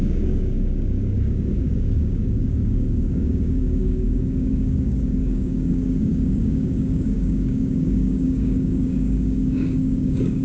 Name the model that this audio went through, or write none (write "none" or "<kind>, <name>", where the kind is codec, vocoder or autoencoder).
codec, DAC